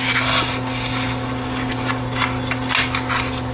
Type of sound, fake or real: real